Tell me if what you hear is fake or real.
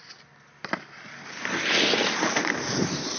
real